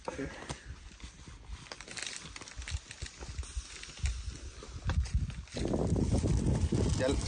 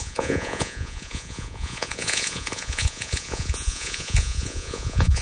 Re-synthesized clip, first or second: second